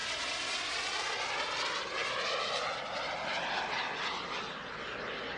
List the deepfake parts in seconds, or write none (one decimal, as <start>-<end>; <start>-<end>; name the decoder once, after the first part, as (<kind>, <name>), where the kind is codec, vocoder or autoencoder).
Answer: none